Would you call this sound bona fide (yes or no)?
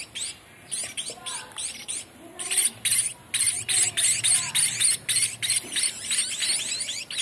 yes